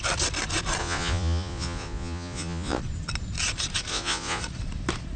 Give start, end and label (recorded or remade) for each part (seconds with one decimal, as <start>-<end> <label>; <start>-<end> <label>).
0.0-0.8 recorded; 0.8-2.8 remade; 2.8-3.9 recorded; 3.9-4.4 remade; 4.4-5.2 recorded